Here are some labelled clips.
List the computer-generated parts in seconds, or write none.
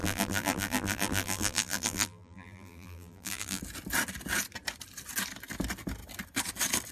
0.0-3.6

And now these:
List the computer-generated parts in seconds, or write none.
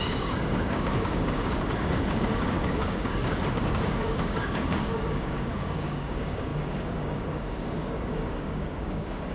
0.0-9.3